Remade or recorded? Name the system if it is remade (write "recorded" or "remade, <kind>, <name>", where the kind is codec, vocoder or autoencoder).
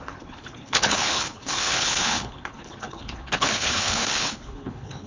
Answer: remade, codec, HILCodec